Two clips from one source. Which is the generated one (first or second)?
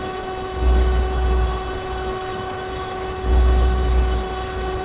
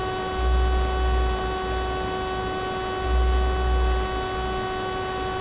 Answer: first